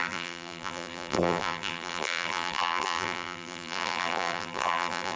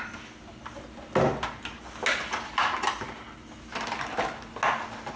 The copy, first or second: first